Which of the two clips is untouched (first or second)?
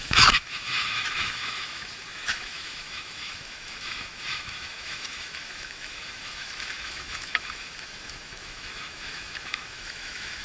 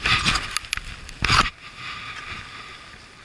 second